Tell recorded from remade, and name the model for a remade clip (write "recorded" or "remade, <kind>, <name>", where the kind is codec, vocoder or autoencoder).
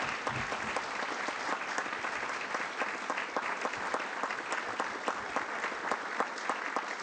recorded